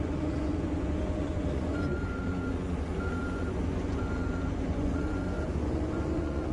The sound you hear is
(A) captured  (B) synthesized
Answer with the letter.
B